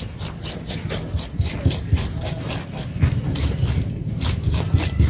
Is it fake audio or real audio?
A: real